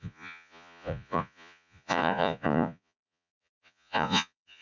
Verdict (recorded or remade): remade